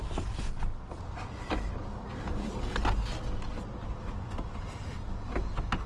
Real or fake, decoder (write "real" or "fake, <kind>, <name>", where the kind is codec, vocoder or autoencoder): real